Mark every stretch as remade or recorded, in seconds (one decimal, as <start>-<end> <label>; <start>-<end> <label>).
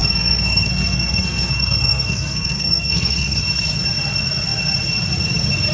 0.0-3.4 remade; 3.4-5.7 recorded